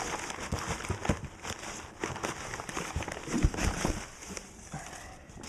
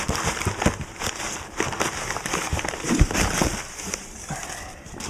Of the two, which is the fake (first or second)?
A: second